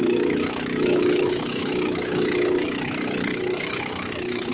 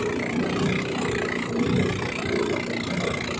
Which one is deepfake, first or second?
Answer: first